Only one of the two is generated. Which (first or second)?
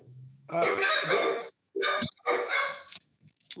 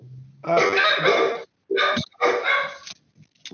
first